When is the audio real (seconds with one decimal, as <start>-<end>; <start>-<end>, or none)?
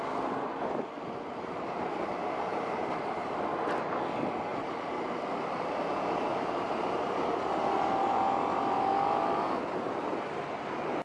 0.0-2.2; 3.4-6.3; 7.5-11.0